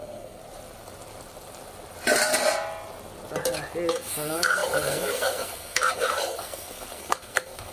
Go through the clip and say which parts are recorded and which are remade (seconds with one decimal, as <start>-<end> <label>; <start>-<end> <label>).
0.0-0.4 remade; 0.4-3.9 recorded; 3.9-7.7 remade